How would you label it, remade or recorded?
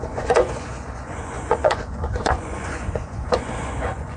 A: remade